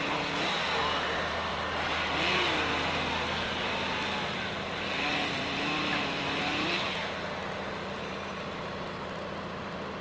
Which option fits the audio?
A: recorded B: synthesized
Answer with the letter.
A